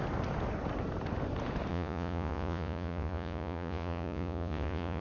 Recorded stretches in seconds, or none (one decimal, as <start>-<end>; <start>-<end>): 0.0-1.7